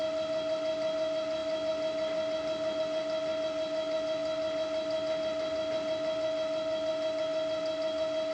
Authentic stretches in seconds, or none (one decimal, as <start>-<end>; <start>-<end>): 0.0-8.3